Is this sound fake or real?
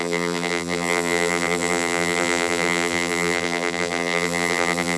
fake